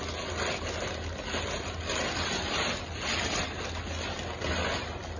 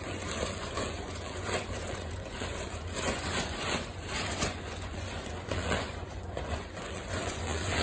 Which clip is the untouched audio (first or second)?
first